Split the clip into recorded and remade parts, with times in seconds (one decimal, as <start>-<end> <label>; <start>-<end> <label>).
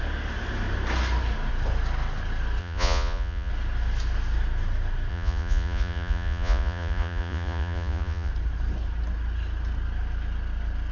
0.0-2.6 recorded; 2.6-3.5 remade; 3.5-5.1 recorded; 5.1-8.3 remade; 8.3-10.9 recorded